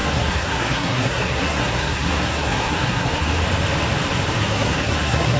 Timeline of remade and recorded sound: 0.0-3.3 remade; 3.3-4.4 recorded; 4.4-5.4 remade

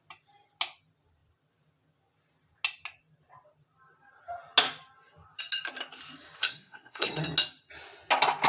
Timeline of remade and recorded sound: 0.0-6.4 recorded; 6.4-7.2 remade; 7.2-8.5 recorded

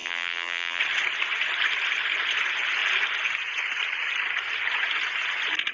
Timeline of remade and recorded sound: 0.0-0.8 remade; 0.8-5.7 recorded